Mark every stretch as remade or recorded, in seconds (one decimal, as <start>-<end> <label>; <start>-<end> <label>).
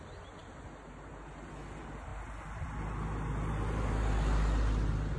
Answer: 0.0-2.1 recorded; 2.1-2.6 remade; 2.6-5.2 recorded